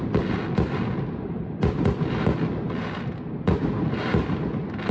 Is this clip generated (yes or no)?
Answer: no